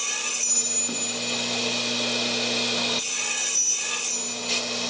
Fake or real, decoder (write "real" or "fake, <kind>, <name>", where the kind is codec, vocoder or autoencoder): real